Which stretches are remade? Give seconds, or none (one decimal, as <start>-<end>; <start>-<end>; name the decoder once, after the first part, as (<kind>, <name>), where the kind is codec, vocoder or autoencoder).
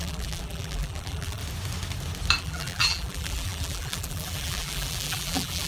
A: 0.0-1.4 (vocoder, BigVGAN v2); 2.4-5.7